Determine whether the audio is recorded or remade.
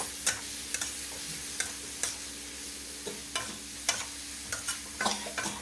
recorded